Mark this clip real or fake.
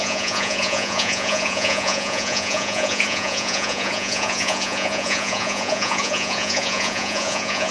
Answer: fake